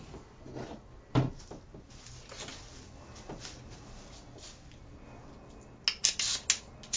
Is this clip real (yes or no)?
yes